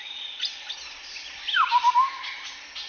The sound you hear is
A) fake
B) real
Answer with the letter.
B